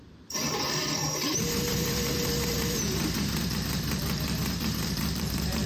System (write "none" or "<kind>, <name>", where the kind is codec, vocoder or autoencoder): vocoder, BigVGAN v2